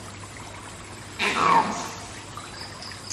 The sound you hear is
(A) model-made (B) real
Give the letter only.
B